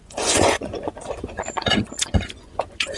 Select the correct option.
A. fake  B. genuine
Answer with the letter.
A